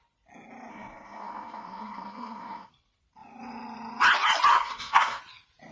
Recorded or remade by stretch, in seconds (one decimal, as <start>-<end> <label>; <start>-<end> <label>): 0.0-0.7 recorded; 0.7-2.7 remade; 2.7-4.5 recorded; 4.5-5.2 remade; 5.2-5.7 recorded